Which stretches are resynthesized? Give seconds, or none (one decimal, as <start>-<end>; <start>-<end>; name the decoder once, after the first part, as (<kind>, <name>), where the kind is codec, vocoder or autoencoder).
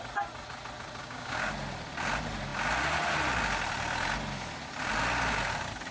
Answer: 1.0-1.5 (codec, DAC)